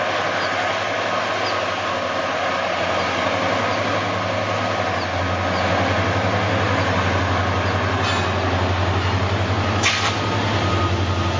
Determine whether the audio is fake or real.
real